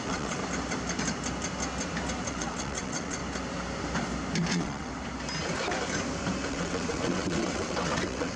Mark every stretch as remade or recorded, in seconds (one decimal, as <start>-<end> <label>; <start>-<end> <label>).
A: 0.0-0.4 remade; 0.4-2.3 recorded; 2.3-3.2 remade; 3.2-4.5 recorded; 4.5-4.9 remade; 4.9-6.5 recorded; 6.5-8.4 remade